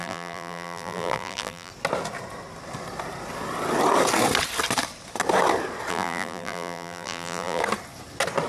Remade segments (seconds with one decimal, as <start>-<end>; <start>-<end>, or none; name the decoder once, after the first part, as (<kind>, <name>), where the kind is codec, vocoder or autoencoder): 0.0-1.7 (vocoder, BigVGAN v2); 5.9-7.6